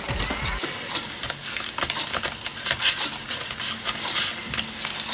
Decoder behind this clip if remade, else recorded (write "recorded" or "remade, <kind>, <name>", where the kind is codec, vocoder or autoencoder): recorded